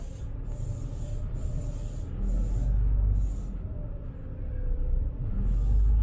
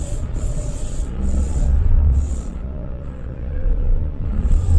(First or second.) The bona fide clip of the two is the first